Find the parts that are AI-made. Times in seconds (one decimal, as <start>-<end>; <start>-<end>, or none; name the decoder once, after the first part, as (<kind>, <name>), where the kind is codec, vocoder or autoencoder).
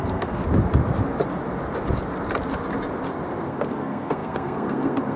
0.0-0.4 (codec, SNAC); 3.5-5.2